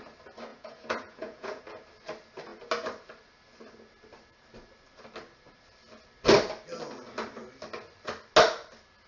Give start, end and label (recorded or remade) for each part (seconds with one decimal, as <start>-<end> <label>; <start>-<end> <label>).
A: 0.0-0.5 recorded; 0.5-1.6 remade; 1.6-9.1 recorded